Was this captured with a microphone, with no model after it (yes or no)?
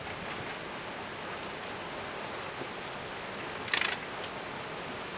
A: yes